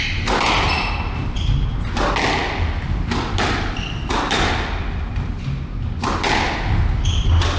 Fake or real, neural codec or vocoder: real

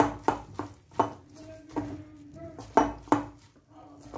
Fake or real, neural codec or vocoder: real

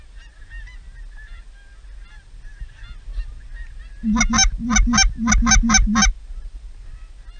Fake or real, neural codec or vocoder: real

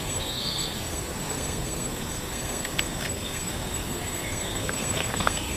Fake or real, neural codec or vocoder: fake, codec, SNAC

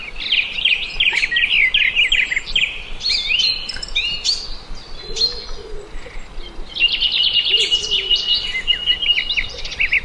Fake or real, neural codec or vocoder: real